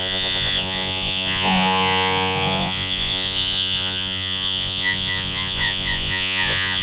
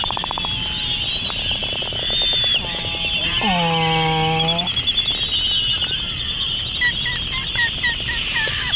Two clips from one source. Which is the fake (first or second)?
first